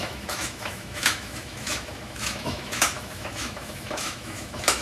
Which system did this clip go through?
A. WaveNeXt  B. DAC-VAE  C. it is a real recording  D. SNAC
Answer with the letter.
B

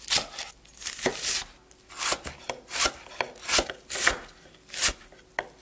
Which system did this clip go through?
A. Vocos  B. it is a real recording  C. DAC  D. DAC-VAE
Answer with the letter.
B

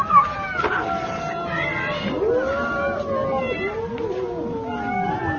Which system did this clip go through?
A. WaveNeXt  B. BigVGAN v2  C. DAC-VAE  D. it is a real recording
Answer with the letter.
D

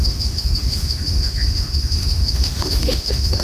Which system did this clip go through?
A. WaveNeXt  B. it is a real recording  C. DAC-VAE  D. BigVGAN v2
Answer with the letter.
C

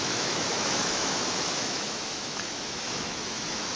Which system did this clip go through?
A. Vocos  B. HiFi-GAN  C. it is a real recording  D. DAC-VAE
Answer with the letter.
D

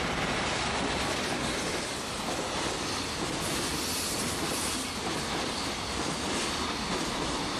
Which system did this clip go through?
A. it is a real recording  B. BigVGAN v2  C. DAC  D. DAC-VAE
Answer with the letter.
A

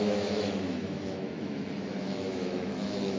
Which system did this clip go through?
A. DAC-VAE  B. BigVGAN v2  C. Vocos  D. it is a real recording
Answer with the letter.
A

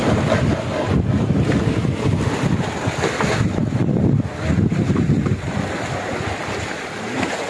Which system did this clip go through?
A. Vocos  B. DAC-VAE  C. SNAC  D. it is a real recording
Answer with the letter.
D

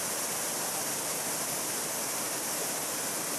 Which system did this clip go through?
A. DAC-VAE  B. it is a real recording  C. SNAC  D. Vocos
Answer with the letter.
B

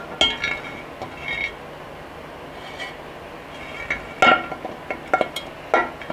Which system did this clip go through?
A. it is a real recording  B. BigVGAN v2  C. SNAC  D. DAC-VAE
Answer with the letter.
A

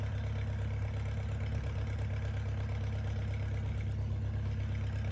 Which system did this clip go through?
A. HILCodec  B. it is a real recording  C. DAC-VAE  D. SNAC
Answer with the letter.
B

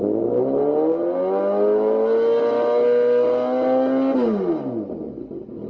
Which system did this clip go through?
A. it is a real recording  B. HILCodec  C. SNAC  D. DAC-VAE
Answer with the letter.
A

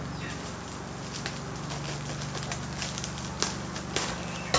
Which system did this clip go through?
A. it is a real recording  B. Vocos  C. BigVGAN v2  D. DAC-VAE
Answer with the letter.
A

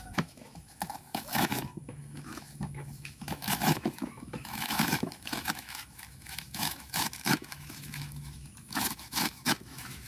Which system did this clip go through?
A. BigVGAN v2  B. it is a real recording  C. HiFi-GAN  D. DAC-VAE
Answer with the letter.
D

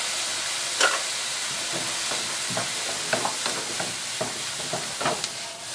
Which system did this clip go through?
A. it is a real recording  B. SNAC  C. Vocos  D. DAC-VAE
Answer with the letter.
A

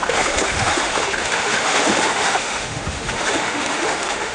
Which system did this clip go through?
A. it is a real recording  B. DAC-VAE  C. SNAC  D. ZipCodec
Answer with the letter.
B